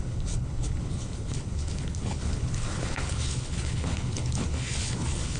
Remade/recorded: remade